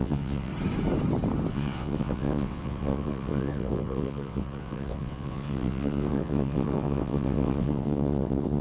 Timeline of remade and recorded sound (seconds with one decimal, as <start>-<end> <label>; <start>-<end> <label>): 0.0-0.5 remade; 0.5-1.5 recorded; 1.5-8.6 remade